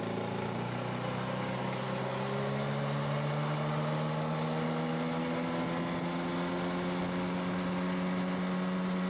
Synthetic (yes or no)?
no